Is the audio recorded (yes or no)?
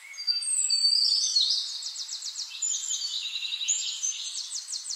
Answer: no